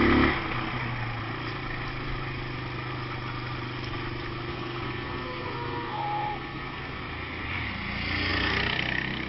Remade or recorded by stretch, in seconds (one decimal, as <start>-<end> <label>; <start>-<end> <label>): 0.0-4.5 recorded; 4.5-7.0 remade; 7.0-9.3 recorded